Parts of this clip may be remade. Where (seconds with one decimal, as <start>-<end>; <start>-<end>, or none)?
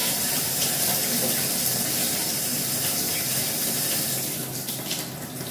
0.0-0.8